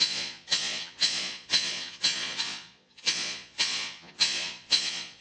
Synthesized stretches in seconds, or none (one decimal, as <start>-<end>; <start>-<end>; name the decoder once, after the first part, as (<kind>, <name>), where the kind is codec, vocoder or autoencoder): 0.0-5.2 (vocoder, Vocos)

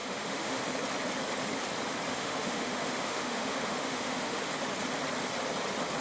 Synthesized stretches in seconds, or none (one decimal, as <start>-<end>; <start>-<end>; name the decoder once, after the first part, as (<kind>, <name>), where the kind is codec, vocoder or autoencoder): 0.0-0.6 (autoencoder, DAC-VAE); 2.1-4.4

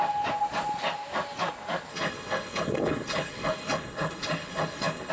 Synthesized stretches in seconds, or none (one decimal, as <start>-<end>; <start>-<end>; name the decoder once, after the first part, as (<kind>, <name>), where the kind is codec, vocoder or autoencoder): 1.9-5.1 (codec, HILCodec)

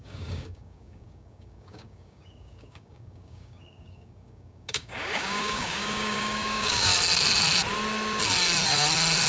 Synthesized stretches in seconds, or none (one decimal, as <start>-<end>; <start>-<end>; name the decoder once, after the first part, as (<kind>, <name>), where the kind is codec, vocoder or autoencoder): 0.0-6.9 (codec, DAC)

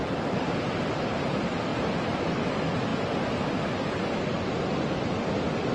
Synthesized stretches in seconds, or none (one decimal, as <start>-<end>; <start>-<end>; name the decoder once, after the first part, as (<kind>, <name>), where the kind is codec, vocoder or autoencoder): none

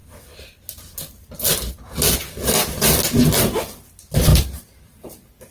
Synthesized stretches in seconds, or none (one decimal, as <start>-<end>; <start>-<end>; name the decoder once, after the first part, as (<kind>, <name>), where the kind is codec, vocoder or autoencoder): 4.3-5.5 (vocoder, BigVGAN v2)

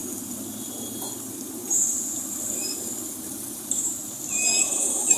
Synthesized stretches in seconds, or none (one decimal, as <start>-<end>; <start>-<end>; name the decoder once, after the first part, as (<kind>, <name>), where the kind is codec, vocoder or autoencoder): 4.5-5.2 (autoencoder, DAC-VAE)